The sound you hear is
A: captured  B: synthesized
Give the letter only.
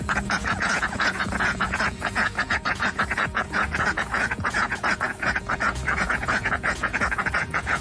B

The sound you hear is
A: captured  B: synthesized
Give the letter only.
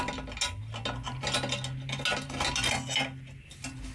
A